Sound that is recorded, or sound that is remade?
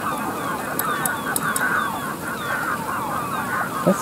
recorded